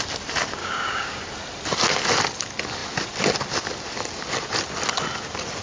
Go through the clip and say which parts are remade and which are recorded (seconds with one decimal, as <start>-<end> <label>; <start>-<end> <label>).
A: 0.0-0.6 recorded; 0.6-1.2 remade; 1.2-5.6 recorded